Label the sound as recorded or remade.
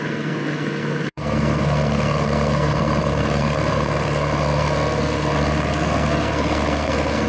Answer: remade